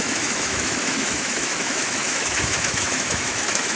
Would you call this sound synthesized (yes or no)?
yes